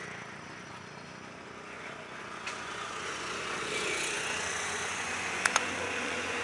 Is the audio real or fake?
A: fake